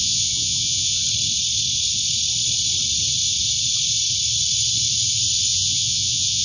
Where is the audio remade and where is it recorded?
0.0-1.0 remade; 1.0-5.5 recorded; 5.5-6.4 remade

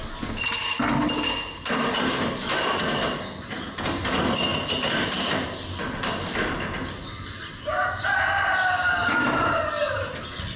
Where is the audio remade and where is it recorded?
0.0-10.6 recorded